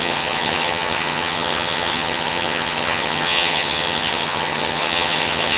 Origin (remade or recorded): remade